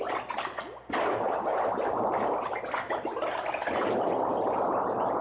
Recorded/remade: recorded